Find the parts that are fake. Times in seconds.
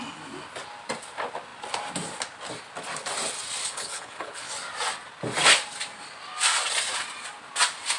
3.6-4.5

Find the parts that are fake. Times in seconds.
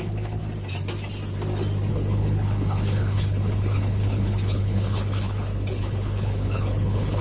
0.0-0.4; 1.9-7.2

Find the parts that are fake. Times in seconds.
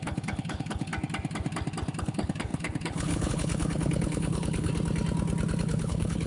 0.0-0.9; 2.0-4.7; 5.6-6.3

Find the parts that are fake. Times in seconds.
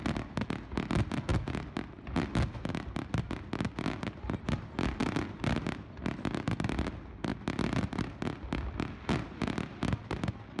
none